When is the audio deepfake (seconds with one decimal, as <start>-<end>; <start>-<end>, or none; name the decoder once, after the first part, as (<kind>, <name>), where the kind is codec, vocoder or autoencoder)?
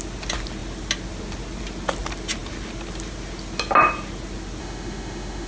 4.6-5.5 (autoencoder, DAC-VAE)